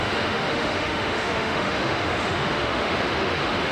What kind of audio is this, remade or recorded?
remade